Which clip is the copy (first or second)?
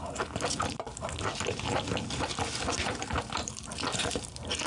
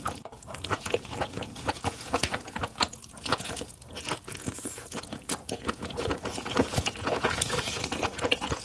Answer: second